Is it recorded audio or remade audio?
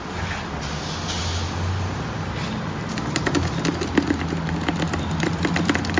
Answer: recorded